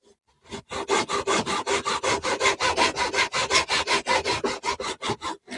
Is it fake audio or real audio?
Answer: real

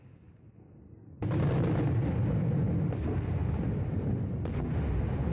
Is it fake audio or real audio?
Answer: real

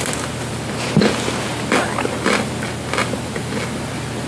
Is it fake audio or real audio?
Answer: real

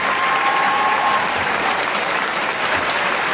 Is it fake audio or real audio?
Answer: fake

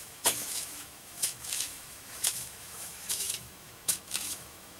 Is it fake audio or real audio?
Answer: fake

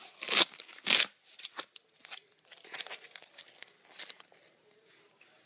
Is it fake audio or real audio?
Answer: real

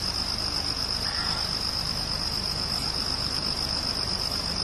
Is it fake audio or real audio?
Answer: fake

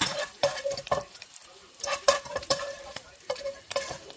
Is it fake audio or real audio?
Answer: fake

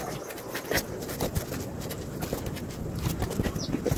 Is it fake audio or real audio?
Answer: real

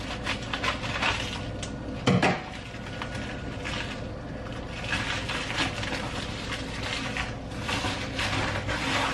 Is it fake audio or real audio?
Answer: real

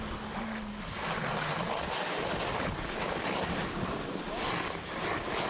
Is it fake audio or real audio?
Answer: real